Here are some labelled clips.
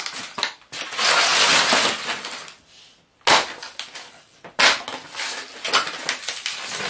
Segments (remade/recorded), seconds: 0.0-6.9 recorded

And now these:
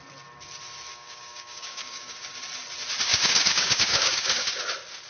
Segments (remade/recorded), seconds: 0.0-0.9 recorded; 0.9-2.3 remade; 2.3-3.1 recorded; 3.1-4.6 remade; 4.6-5.1 recorded